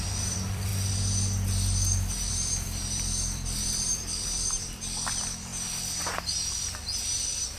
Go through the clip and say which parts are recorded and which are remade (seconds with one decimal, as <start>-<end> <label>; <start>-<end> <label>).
0.0-0.7 remade; 0.7-2.3 recorded; 2.3-5.5 remade; 5.5-6.4 recorded; 6.4-7.6 remade